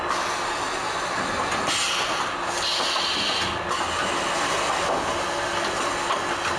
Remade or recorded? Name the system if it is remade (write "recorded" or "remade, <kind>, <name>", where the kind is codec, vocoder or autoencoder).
recorded